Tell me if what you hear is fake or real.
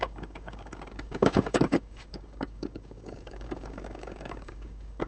fake